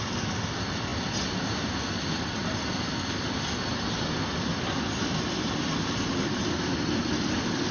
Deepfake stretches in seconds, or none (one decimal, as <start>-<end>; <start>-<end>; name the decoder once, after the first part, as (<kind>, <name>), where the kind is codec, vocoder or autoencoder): none